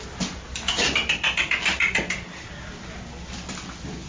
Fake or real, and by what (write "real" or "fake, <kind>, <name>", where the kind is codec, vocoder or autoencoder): real